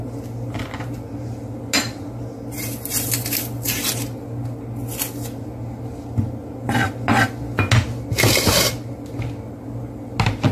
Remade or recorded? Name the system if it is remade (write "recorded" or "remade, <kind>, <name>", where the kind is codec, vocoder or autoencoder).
recorded